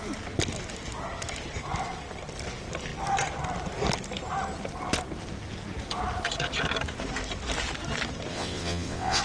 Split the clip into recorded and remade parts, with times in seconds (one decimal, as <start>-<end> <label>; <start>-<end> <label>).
0.0-8.3 recorded; 8.3-9.2 remade